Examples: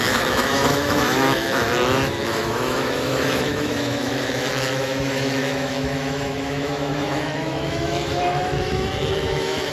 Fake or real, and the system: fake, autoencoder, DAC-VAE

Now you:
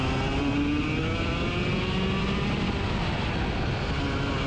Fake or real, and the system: real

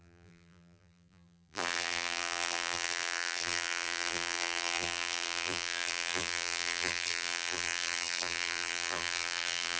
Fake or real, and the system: fake, vocoder, BigVGAN v2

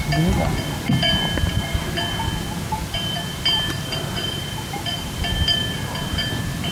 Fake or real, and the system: fake, vocoder, BigVGAN v2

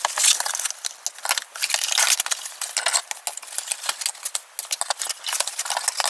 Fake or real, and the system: real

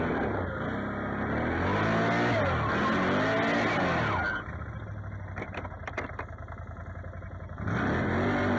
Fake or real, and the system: real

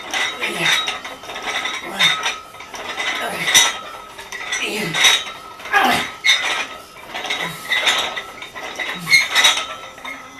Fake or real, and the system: real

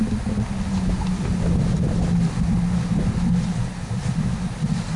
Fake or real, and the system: real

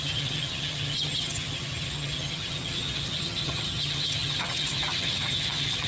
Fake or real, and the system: fake, vocoder, HiFi-GAN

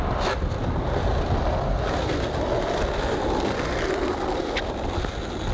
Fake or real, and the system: real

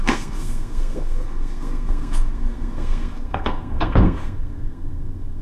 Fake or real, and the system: fake, codec, SNAC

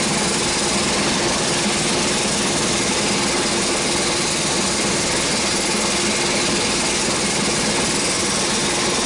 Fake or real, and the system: real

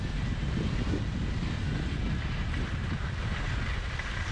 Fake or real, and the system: real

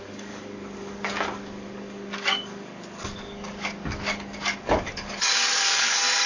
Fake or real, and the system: fake, codec, DAC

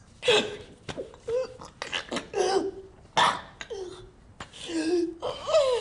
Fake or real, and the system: real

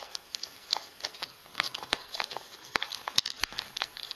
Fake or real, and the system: fake, codec, SNAC